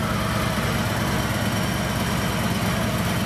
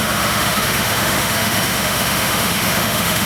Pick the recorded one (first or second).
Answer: first